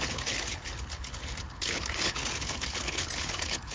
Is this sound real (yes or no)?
no